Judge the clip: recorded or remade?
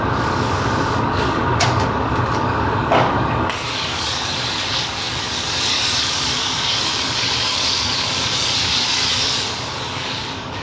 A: remade